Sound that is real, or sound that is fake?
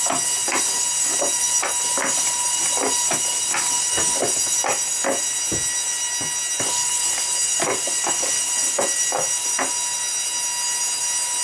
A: real